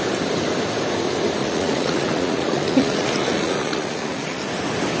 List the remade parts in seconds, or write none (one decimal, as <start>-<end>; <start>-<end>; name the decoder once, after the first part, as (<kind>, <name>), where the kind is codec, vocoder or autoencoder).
1.4-4.4 (vocoder, Vocos)